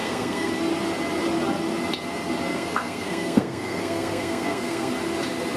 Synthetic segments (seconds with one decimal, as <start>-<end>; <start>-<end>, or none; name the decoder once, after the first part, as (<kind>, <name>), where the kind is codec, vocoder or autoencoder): 0.0-0.5 (codec, SNAC); 2.5-4.9